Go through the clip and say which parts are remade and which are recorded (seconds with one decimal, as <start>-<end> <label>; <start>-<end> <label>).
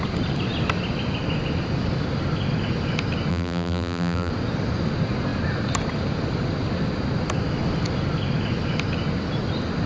0.0-3.3 recorded; 3.3-4.3 remade; 4.3-9.9 recorded